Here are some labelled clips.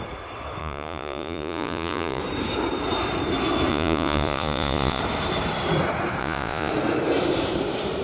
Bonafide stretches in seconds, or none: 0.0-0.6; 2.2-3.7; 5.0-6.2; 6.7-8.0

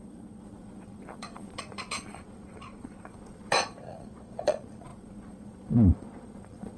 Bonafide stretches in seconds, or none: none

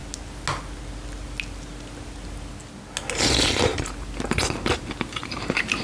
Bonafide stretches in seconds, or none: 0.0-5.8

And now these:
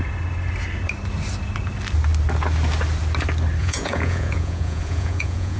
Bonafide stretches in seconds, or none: 0.0-3.6

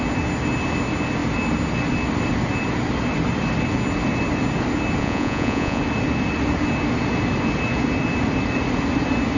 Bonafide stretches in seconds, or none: 0.0-5.0; 5.8-9.4

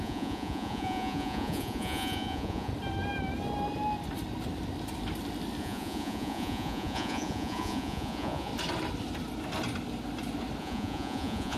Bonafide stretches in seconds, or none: 2.7-5.6; 8.5-10.6

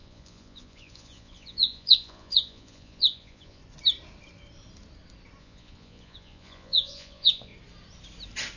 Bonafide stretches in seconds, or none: 3.6-5.4; 7.5-8.6